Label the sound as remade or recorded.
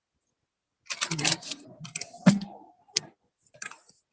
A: recorded